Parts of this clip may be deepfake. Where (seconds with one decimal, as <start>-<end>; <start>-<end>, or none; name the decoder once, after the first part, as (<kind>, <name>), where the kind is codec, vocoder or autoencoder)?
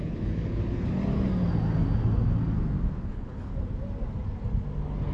0.0-1.0 (codec, HILCodec); 3.1-3.5